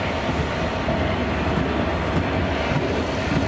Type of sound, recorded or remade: recorded